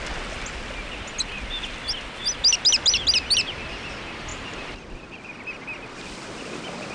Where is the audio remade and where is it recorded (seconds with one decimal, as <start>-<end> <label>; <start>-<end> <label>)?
0.0-6.9 recorded

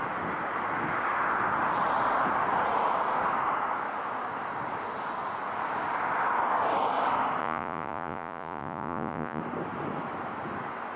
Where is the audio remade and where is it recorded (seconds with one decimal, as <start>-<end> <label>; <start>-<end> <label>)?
0.0-7.4 recorded; 7.4-9.4 remade; 9.4-11.0 recorded